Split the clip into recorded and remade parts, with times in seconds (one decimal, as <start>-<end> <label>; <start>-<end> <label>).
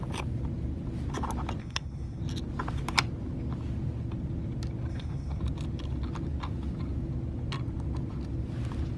0.0-1.6 recorded; 1.6-2.2 remade; 2.2-4.9 recorded; 4.9-5.4 remade; 5.4-9.0 recorded